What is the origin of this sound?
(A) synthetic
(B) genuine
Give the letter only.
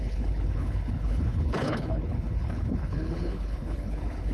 A